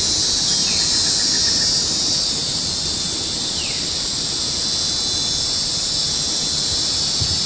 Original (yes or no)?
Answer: yes